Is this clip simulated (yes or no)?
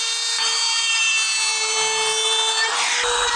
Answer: yes